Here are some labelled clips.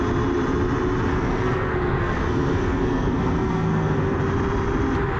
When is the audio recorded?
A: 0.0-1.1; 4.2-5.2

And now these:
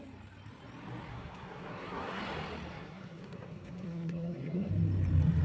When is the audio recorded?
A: 0.0-1.1; 2.2-2.7; 4.7-5.4

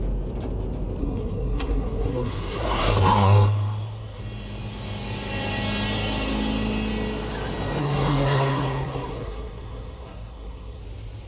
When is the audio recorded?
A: 0.0-1.0; 4.2-7.8; 10.8-11.3

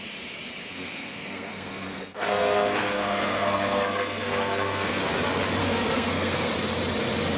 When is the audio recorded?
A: 0.0-0.6; 5.0-5.6; 6.5-7.4

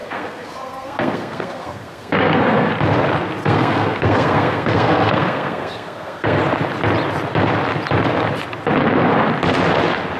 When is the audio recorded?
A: 2.7-3.4; 6.4-10.2

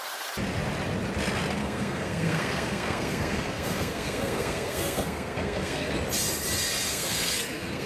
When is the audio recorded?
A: 0.0-1.6; 5.9-6.9